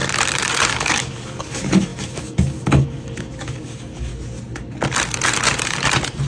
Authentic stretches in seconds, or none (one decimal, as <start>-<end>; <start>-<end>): 0.0-0.7; 4.1-6.3